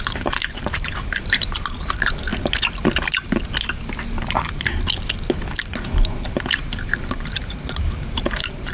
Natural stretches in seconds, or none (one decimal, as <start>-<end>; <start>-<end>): 2.3-6.5